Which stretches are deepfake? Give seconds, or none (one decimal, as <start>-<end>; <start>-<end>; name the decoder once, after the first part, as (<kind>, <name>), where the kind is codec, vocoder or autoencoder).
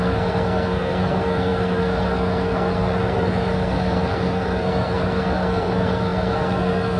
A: 0.0-7.0 (codec, SNAC)